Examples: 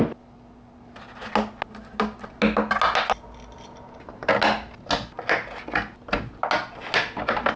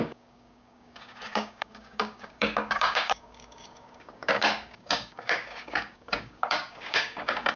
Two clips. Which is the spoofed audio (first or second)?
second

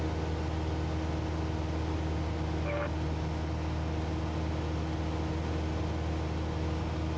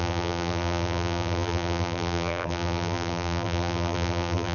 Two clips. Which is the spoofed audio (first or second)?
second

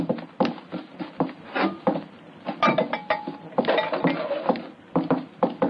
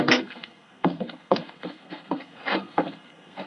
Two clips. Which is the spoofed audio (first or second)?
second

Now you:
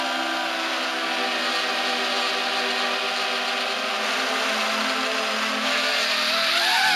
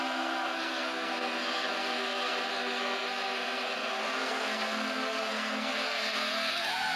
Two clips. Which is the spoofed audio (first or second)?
second